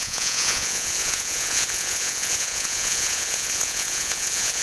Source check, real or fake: fake